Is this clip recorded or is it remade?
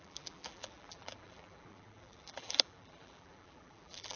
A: remade